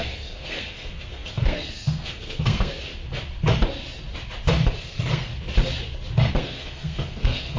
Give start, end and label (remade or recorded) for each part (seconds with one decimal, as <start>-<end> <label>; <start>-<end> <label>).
0.0-2.9 remade; 2.9-4.8 recorded; 4.8-5.3 remade; 5.3-6.3 recorded; 6.3-7.6 remade